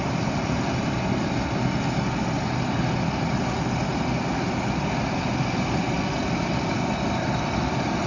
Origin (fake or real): real